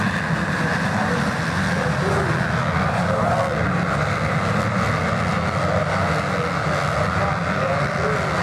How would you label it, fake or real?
real